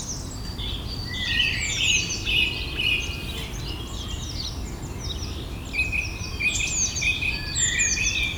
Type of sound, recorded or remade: recorded